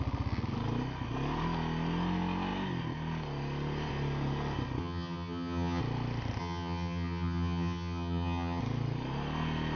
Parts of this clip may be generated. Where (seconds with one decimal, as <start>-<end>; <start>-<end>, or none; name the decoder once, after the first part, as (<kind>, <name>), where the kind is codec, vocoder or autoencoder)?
4.8-5.8 (vocoder, HiFi-GAN); 6.4-8.6